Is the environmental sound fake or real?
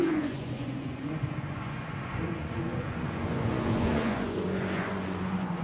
fake